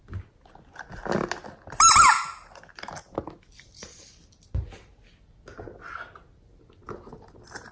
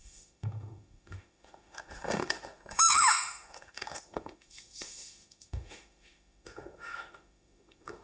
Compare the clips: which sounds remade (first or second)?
second